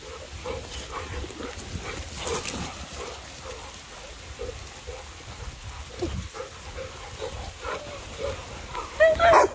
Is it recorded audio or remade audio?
recorded